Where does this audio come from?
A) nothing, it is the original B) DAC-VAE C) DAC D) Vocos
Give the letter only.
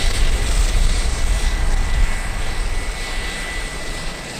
A